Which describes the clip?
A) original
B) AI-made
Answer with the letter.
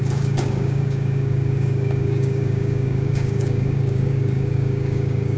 B